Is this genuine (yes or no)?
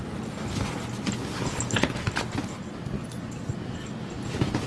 yes